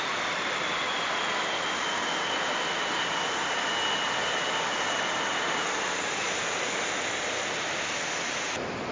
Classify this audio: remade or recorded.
recorded